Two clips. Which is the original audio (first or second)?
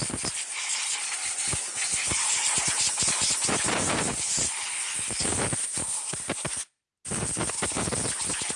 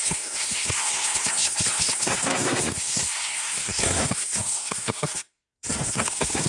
first